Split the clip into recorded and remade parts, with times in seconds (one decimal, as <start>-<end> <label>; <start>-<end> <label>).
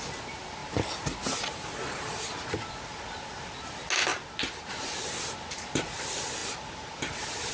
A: 0.0-7.5 recorded